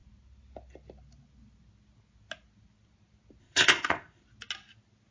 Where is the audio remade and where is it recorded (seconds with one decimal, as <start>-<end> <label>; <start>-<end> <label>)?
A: 0.0-3.4 recorded; 3.4-4.2 remade; 4.2-5.1 recorded